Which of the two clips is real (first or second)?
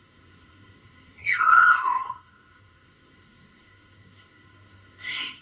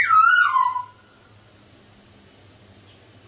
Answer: second